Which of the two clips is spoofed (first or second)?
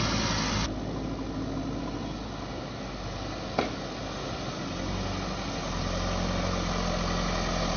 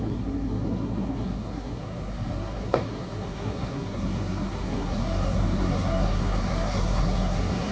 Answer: second